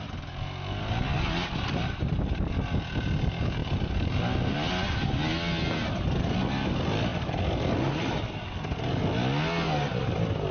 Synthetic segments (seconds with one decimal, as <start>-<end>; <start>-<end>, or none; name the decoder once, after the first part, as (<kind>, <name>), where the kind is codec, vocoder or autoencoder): none